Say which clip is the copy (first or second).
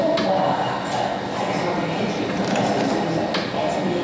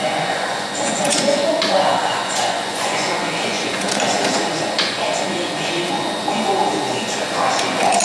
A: second